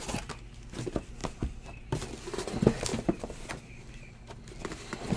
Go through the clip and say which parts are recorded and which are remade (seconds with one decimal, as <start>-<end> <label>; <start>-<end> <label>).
0.0-5.2 recorded